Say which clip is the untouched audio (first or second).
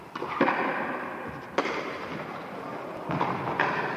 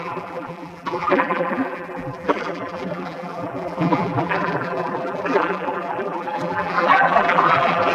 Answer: first